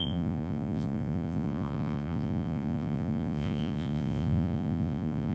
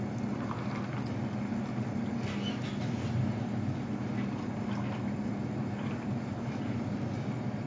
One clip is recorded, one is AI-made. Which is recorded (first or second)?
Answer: second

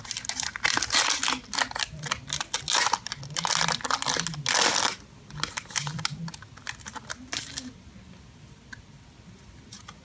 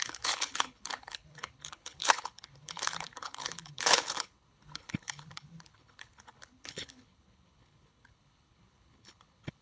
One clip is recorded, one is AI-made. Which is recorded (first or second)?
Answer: first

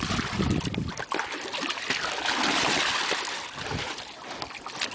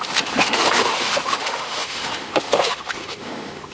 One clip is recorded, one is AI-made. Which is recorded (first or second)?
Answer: first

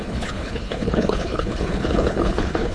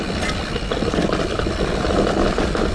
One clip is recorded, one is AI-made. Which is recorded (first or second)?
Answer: second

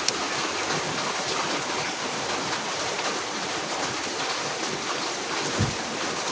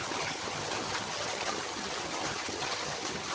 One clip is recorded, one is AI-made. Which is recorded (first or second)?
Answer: first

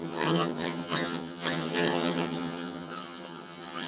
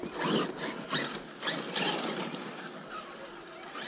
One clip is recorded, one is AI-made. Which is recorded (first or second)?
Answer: second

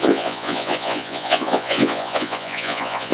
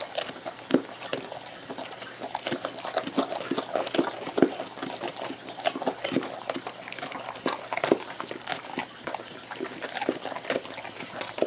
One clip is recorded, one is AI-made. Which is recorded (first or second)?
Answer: second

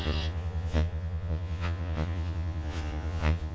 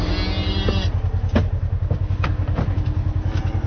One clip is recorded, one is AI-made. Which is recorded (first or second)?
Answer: second